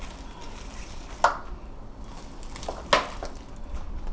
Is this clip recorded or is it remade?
recorded